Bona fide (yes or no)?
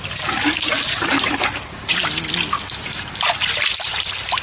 yes